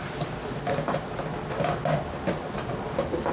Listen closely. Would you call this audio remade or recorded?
recorded